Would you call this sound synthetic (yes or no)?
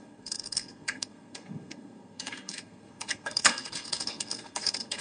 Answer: yes